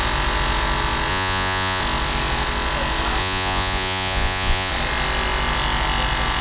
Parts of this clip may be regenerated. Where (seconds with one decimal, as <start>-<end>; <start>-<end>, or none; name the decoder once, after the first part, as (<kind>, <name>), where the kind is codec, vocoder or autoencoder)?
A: 1.1-1.8 (vocoder, Vocos); 3.2-4.7